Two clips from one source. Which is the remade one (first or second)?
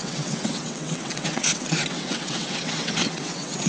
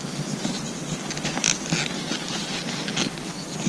first